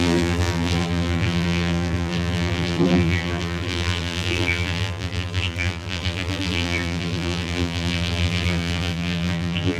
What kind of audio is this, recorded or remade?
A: remade